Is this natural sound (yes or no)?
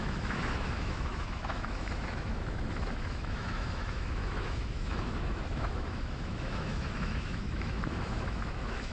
no